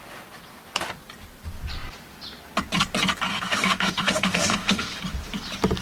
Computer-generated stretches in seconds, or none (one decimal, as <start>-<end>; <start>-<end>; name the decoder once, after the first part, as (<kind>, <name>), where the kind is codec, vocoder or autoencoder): 3.3-5.0 (autoencoder, DAC-VAE)